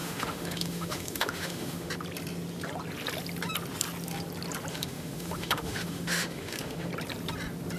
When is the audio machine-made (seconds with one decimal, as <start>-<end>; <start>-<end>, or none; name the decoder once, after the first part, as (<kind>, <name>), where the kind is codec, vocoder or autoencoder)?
0.0-1.9 (autoencoder, DAC-VAE); 4.7-6.9